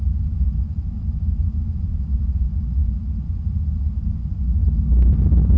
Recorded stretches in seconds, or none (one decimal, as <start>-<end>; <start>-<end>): 0.0-5.6